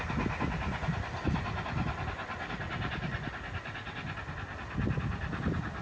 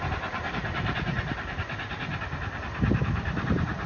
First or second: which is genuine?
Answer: first